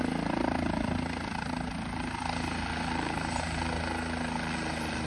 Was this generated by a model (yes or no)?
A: no